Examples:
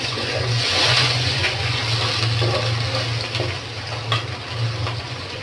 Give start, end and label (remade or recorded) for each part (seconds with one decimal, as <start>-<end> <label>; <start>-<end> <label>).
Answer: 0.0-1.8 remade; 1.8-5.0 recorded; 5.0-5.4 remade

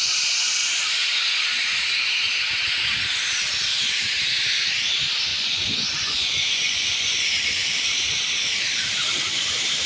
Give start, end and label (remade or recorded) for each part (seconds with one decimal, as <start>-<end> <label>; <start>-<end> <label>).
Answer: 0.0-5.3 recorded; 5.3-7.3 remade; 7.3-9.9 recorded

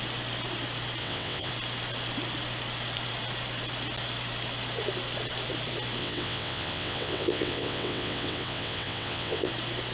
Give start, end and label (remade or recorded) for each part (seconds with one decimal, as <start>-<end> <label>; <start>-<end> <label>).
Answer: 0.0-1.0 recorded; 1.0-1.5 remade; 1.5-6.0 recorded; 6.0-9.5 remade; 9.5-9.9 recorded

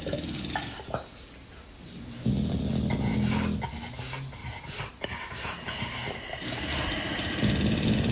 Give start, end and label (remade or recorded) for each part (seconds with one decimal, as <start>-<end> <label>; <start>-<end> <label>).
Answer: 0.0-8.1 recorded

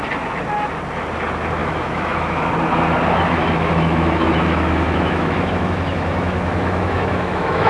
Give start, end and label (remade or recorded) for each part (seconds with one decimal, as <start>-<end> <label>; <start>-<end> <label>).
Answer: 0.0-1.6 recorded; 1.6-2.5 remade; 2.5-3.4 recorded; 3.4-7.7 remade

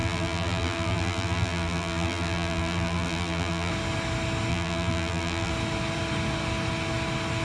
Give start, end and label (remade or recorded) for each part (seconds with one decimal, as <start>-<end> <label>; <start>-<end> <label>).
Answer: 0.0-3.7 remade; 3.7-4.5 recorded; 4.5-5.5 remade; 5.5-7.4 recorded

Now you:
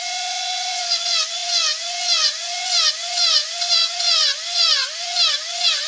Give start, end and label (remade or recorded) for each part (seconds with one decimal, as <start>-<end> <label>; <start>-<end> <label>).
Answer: 0.0-5.9 remade